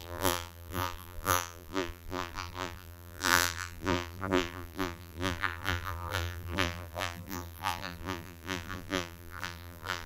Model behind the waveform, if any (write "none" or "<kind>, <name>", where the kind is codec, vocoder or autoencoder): vocoder, BigVGAN v2